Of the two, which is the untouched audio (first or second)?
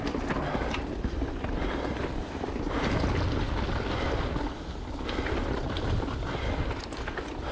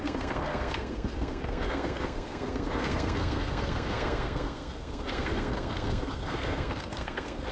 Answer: first